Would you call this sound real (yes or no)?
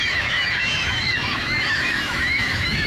no